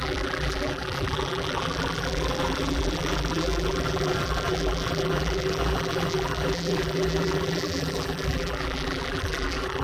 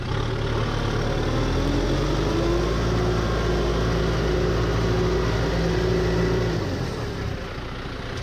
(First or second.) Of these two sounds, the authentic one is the second